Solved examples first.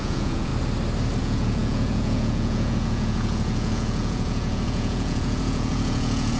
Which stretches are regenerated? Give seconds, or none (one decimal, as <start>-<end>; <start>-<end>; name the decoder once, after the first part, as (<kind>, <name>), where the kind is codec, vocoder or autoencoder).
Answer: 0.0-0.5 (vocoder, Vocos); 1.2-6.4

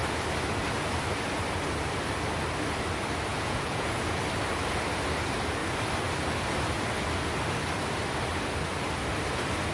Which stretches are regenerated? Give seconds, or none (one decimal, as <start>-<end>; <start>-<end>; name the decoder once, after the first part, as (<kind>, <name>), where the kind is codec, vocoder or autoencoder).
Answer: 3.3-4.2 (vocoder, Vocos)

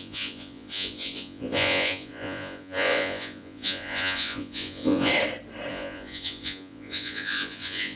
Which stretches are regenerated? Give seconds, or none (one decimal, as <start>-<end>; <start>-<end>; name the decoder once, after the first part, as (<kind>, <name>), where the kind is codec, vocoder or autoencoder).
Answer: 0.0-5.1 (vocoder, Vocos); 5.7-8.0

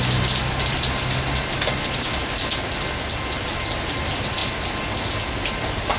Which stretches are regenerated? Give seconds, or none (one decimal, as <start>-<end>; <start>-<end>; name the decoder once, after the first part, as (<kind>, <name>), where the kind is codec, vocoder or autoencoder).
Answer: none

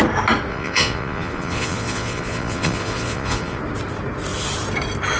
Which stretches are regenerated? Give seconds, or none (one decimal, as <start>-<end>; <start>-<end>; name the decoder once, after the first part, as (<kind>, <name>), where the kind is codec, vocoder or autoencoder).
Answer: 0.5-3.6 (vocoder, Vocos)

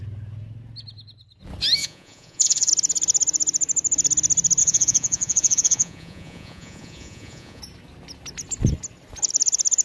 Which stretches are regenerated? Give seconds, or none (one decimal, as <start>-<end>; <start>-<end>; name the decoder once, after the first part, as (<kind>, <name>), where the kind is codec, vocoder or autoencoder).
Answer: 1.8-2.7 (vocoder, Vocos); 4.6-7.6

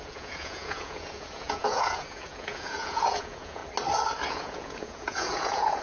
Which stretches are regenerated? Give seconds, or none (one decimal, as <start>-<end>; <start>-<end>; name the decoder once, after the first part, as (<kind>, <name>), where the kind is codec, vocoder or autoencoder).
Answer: 0.0-3.6 (vocoder, Vocos); 4.3-5.8